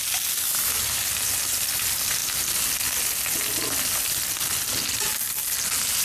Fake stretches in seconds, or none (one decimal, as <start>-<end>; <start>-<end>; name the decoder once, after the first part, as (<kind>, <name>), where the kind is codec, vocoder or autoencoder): none